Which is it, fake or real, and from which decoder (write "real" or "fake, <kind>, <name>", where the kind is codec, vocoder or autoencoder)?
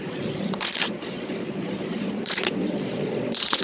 fake, vocoder, Vocos